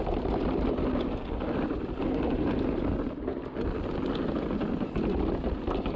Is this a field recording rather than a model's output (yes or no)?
yes